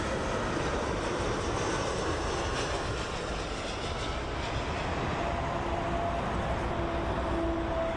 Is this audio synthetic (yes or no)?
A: no